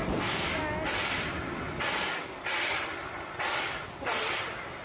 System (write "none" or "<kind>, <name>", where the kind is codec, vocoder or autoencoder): none